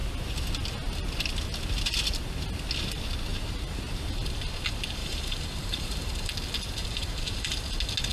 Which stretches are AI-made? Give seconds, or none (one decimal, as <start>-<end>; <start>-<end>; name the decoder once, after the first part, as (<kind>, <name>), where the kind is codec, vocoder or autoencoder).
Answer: 3.3-4.0 (vocoder, BigVGAN v2); 5.0-6.3; 6.8-7.5